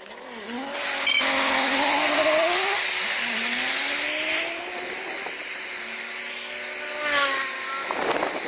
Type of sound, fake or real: real